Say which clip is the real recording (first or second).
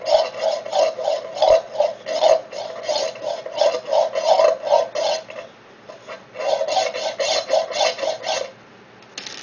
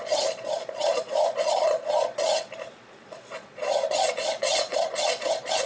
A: first